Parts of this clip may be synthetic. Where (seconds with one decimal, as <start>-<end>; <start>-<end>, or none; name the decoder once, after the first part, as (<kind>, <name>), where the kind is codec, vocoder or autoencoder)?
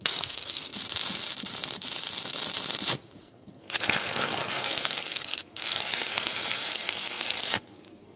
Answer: 0.0-0.7 (codec, SNAC); 3.2-8.2